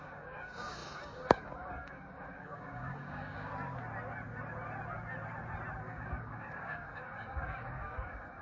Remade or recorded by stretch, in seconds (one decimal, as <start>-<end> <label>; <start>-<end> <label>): 0.0-3.5 remade; 3.5-5.8 recorded; 5.8-8.4 remade

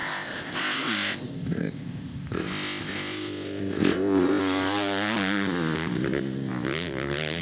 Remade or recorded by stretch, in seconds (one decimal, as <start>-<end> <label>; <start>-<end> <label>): 0.0-4.4 remade; 4.4-7.4 recorded

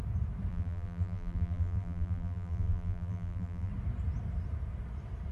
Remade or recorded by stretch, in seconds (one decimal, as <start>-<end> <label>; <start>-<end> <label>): 0.0-0.5 recorded; 0.5-3.7 remade; 3.7-5.3 recorded

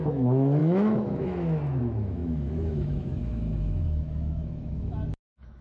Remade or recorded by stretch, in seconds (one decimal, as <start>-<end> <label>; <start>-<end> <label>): 0.0-5.6 remade